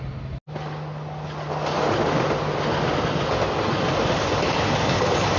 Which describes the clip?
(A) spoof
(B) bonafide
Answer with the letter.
B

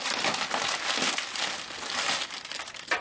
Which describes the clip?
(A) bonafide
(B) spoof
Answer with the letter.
A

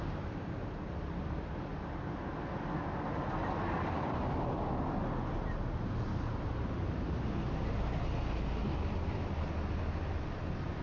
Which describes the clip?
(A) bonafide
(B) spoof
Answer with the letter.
A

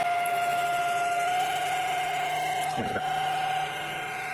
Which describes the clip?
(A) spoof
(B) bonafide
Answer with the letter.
B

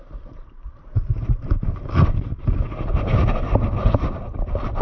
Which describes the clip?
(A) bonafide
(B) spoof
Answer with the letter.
B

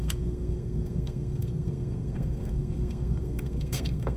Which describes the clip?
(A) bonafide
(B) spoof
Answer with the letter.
B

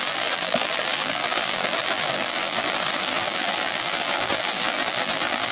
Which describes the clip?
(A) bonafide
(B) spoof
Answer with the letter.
B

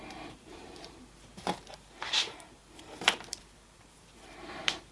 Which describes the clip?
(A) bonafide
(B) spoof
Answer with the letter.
B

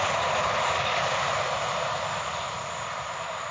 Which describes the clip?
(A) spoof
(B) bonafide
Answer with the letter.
B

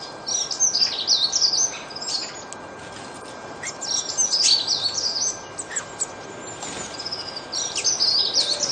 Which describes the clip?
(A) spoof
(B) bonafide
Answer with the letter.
B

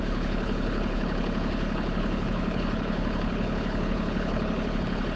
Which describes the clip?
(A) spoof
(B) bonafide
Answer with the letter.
A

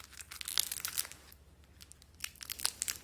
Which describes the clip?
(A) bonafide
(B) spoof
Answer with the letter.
A